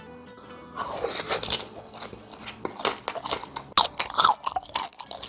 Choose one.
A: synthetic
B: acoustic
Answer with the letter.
B